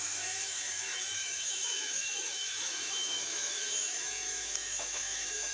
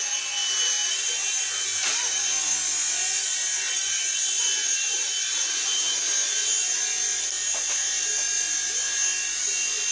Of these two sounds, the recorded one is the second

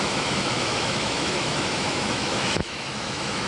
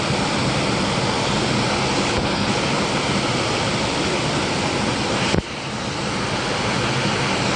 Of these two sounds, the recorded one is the second